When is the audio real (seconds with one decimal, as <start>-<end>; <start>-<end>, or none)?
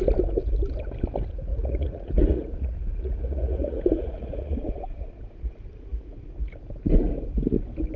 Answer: 0.0-1.5; 5.1-8.0